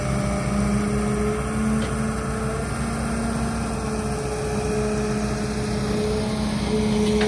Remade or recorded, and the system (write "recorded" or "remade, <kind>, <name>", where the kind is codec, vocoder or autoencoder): recorded